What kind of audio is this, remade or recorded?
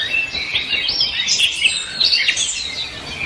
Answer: recorded